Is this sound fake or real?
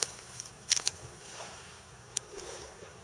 fake